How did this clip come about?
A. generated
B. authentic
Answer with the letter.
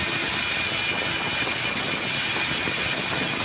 B